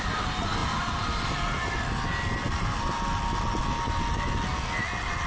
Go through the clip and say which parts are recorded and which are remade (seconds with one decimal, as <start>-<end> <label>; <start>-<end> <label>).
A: 0.0-5.3 recorded